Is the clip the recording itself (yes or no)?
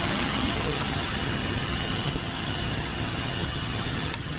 no